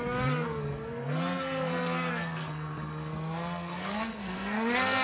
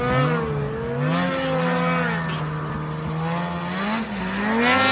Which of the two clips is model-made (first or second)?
first